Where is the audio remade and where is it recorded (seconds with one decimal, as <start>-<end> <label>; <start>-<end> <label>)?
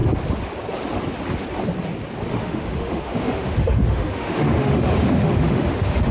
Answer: 0.0-2.4 recorded; 2.4-6.1 remade